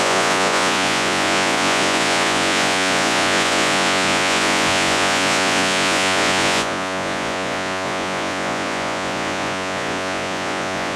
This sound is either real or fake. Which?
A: fake